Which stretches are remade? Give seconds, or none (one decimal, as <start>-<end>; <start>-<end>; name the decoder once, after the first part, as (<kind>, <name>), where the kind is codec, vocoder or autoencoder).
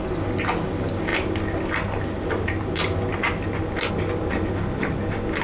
none